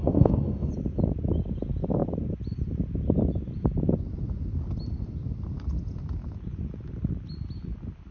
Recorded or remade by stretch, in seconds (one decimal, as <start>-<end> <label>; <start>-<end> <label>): 0.0-0.7 remade; 0.7-8.1 recorded